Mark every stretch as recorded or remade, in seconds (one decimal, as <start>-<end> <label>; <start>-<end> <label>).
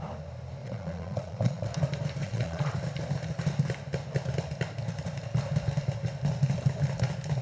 0.0-0.6 recorded; 0.6-1.7 remade; 1.7-2.2 recorded; 2.2-2.7 remade; 2.7-7.4 recorded